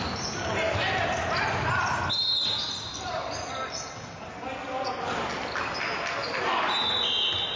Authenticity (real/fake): real